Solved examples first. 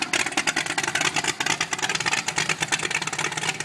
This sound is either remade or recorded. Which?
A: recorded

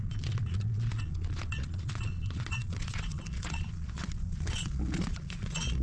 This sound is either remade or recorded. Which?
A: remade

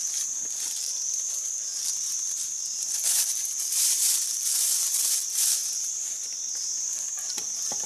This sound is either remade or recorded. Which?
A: remade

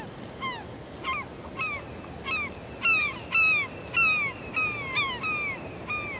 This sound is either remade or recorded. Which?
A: recorded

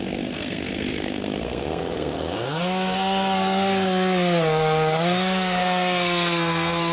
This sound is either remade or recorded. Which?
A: remade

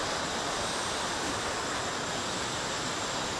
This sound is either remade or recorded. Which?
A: recorded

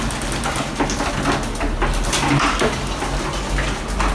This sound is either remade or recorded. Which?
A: recorded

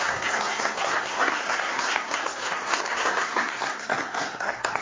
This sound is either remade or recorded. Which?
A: remade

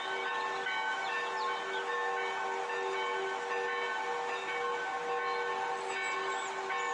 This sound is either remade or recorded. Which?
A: recorded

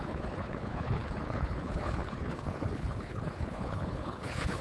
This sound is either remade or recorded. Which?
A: remade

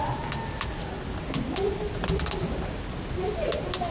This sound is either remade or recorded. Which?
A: recorded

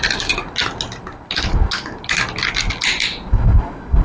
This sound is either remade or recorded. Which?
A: recorded